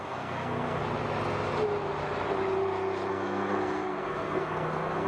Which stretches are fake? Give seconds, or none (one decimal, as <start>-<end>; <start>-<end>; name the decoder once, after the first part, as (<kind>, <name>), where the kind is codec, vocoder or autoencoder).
0.0-0.8 (codec, SNAC); 3.1-5.1